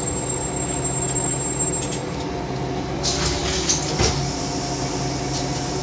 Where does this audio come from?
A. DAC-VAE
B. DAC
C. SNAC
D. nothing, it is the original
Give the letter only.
D